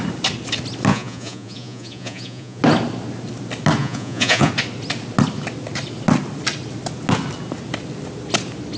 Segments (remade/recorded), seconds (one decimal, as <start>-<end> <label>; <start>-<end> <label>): 0.0-0.9 recorded; 0.9-2.6 remade; 2.6-3.8 recorded; 3.8-4.5 remade; 4.5-8.8 recorded